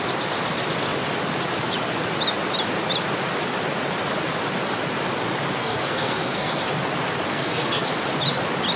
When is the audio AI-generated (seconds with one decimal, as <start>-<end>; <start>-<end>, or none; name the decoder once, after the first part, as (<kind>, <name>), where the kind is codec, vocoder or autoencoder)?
5.6-6.6 (codec, SNAC); 7.3-7.9